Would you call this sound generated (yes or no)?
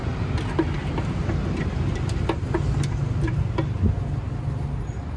no